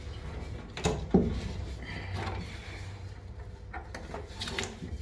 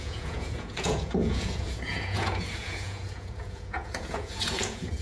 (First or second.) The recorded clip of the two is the first